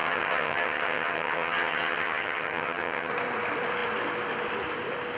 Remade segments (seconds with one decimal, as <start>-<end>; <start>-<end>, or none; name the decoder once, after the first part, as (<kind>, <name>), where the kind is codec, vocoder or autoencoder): 0.0-3.1 (vocoder, HiFi-GAN)